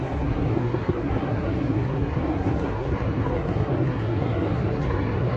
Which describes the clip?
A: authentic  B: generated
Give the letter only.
B